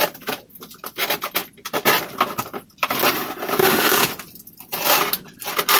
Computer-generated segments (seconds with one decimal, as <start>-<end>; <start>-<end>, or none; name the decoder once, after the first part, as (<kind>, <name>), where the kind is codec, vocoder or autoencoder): 3.6-4.1 (autoencoder, DAC-VAE)